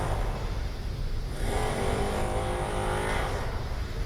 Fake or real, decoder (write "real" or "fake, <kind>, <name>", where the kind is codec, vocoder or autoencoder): real